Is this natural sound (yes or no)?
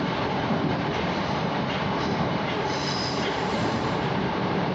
no